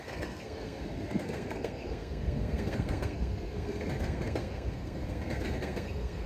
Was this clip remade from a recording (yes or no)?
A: yes